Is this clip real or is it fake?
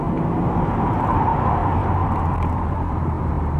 fake